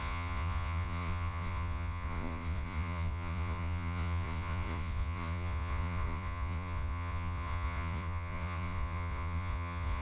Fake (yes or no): yes